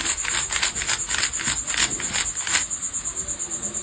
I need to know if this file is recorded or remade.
recorded